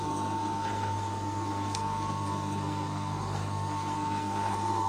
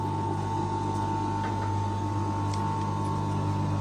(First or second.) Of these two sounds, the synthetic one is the first